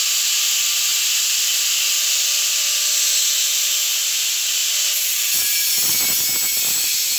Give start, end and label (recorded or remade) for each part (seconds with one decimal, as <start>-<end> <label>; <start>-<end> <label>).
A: 0.0-7.2 recorded